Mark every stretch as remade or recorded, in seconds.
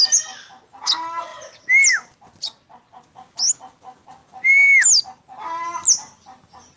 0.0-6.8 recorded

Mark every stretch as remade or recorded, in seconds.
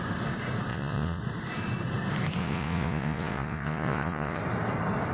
0.0-0.7 recorded; 0.7-1.2 remade; 1.2-2.4 recorded; 2.4-4.4 remade; 4.4-5.1 recorded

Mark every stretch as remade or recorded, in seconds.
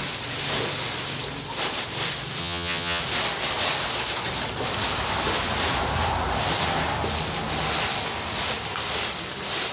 0.0-2.4 recorded; 2.4-3.0 remade; 3.0-9.7 recorded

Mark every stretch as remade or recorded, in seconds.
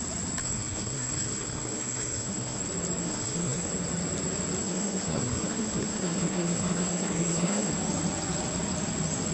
0.0-0.4 recorded; 0.4-2.6 remade; 2.6-3.0 recorded; 3.0-3.7 remade; 3.7-4.6 recorded; 4.6-7.7 remade; 7.7-9.3 recorded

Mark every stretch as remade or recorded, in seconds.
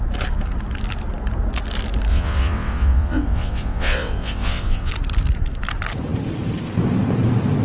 0.0-2.1 recorded; 2.1-4.9 remade; 4.9-7.6 recorded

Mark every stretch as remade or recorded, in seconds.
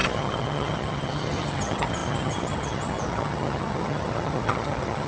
0.0-5.1 remade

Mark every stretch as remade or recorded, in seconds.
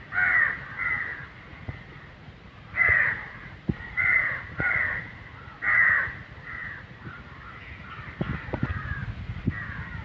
0.0-1.1 recorded; 1.1-6.1 remade; 6.1-6.6 recorded; 6.6-7.2 remade; 7.2-9.0 recorded; 9.0-9.5 remade; 9.5-10.0 recorded